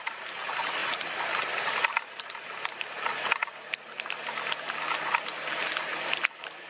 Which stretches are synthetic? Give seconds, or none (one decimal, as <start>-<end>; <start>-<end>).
none